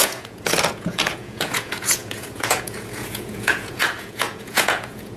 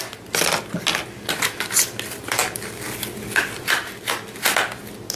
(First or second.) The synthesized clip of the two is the first